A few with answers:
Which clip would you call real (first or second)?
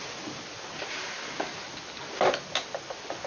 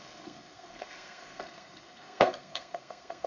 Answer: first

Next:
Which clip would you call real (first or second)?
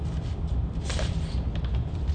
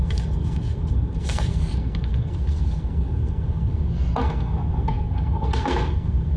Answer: first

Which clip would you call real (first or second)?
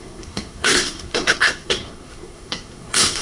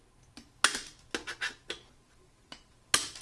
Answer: second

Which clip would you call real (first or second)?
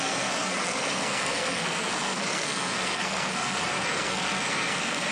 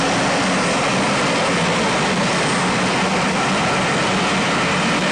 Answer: second